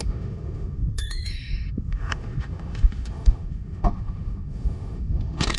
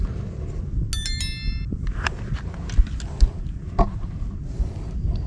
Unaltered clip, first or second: second